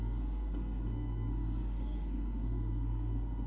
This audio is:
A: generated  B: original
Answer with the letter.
A